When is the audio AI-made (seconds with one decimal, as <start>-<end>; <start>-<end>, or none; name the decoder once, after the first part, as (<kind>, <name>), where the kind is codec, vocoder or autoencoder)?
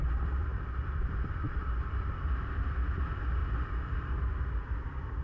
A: none